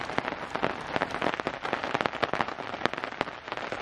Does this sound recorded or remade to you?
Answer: recorded